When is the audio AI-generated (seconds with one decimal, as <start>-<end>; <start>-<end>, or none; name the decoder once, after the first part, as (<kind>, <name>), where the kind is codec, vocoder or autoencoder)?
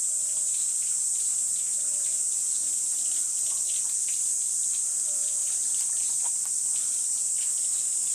5.4-6.7 (vocoder, BigVGAN v2)